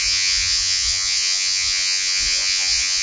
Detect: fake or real fake